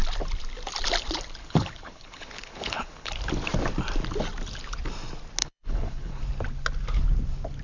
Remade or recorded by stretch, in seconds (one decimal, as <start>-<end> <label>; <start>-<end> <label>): 0.0-1.4 recorded; 1.4-3.1 remade; 3.1-5.4 recorded; 5.4-6.2 remade; 6.2-7.6 recorded